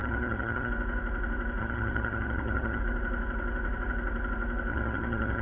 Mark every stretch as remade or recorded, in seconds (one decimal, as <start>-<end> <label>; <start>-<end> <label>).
0.0-0.7 remade; 0.7-1.6 recorded; 1.6-2.8 remade; 2.8-4.7 recorded; 4.7-5.4 remade